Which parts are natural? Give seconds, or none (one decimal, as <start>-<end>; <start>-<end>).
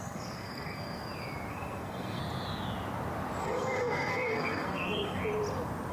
1.0-1.5; 2.2-3.4; 5.2-5.9